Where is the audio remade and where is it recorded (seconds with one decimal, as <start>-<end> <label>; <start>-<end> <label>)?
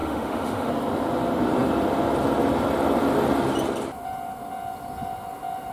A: 0.0-0.7 remade; 0.7-5.7 recorded